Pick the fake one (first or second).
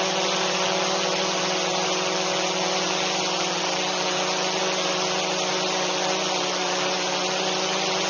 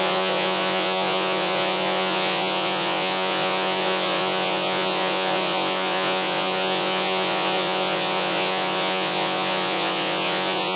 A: second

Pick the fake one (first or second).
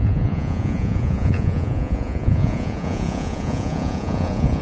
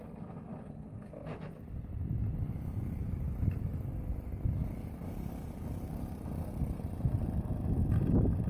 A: first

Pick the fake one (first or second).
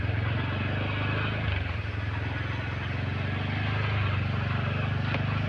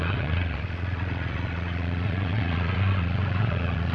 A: second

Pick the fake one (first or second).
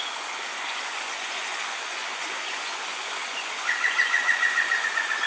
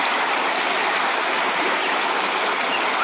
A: first